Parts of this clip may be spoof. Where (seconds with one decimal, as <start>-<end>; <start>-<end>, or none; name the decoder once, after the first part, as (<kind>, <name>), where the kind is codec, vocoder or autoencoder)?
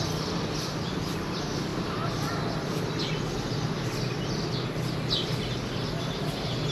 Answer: none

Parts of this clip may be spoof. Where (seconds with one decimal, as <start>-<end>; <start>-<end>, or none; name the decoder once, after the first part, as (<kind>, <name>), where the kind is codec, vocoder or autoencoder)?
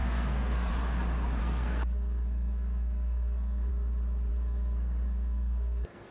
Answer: 0.0-0.7 (codec, SNAC); 1.4-3.7; 4.3-6.1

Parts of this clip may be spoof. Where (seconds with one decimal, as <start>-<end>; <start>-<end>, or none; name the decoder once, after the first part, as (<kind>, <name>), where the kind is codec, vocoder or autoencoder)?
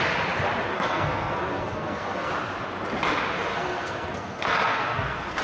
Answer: 0.7-2.3 (codec, SNAC); 3.5-5.4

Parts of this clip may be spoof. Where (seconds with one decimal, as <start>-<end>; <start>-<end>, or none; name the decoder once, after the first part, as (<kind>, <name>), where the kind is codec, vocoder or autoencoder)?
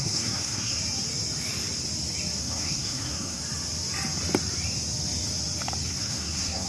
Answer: 0.0-0.8 (codec, SNAC); 2.4-3.4; 5.9-6.7